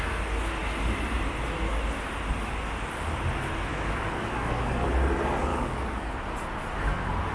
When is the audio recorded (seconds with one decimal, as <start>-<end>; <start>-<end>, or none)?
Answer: 0.0-3.7; 4.9-5.5; 6.1-7.3